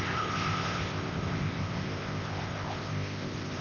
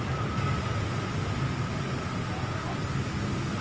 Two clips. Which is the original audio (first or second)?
second